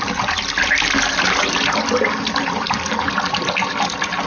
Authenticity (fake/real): real